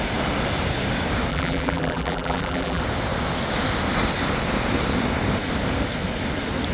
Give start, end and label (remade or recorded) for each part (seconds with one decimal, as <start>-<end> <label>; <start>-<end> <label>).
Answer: 0.0-1.3 recorded; 1.3-2.8 remade; 2.8-6.7 recorded